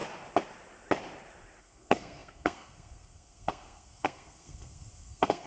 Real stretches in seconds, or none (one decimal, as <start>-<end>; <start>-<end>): 0.0-1.6